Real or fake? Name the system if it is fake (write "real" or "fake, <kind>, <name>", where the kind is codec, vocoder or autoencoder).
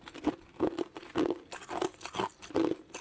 real